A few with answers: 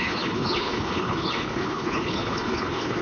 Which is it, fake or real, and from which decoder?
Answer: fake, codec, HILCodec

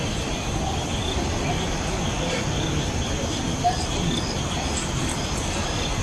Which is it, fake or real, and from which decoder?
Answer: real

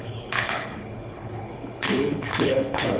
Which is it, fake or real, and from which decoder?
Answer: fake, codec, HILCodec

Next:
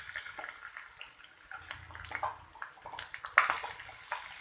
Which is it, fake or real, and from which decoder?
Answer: real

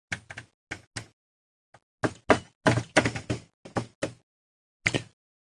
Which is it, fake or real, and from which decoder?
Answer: real